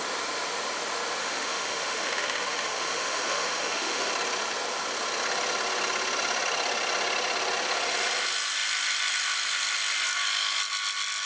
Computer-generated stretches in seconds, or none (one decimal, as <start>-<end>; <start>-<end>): 1.2-4.1